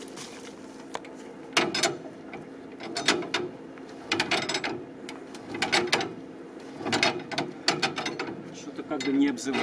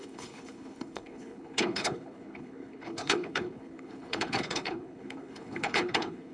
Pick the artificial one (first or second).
second